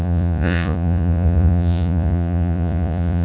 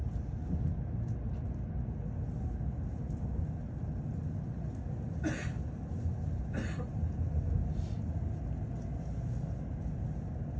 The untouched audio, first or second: second